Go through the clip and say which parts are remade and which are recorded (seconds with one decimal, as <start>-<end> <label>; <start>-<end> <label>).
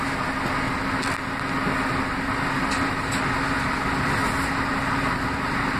0.0-5.8 recorded